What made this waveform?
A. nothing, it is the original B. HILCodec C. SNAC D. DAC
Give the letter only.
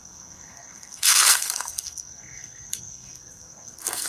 C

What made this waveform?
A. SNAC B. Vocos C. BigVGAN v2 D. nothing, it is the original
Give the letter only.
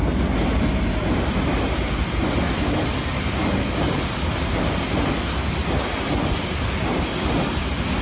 D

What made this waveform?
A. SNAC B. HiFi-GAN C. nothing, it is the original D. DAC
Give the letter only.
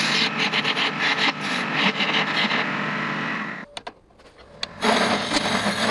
C